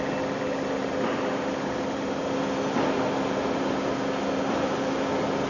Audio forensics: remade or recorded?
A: recorded